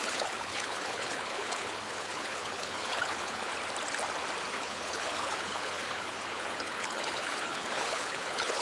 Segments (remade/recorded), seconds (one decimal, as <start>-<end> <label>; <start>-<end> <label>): 0.0-3.5 remade; 3.5-4.5 recorded; 4.5-8.6 remade